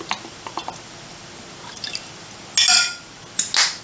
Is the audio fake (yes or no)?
no